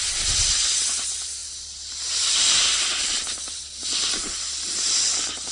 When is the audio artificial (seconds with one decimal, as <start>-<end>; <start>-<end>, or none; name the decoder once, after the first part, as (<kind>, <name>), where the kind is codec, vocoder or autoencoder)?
1.4-4.7 (vocoder, BigVGAN v2)

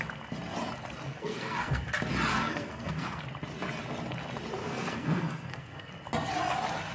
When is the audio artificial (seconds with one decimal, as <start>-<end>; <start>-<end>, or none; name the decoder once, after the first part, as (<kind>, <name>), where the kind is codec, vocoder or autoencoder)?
1.1-1.9 (codec, SNAC); 2.3-3.2; 4.6-5.9

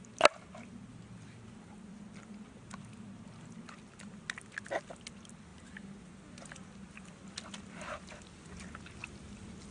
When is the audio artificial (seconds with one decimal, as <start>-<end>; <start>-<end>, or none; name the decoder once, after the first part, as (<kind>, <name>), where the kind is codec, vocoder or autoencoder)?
none

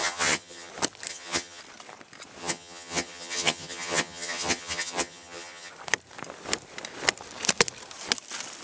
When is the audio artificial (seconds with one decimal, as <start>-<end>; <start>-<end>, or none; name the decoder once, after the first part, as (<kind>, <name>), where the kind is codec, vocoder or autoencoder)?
0.0-0.7 (vocoder, HiFi-GAN); 1.1-1.6; 2.4-5.7

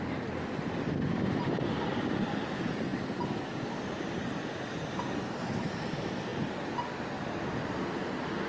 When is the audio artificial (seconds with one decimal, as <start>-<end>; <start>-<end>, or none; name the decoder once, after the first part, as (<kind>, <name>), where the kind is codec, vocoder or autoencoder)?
none

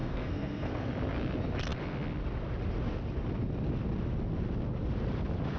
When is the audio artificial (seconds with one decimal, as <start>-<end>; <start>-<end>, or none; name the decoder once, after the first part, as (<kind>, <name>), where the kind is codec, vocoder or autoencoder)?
0.0-0.9 (codec, SNAC)